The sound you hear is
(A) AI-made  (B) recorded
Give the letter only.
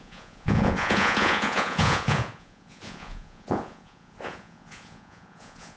A